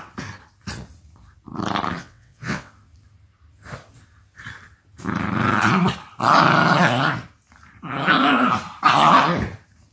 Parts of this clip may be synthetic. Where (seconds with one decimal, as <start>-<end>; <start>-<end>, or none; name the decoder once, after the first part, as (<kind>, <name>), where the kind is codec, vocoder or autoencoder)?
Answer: 2.0-2.7 (vocoder, WaveNeXt)